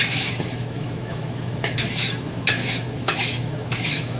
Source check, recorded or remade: remade